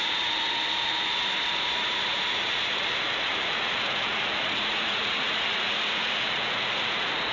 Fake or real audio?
fake